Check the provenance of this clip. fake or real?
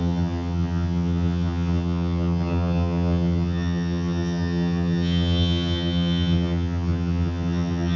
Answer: fake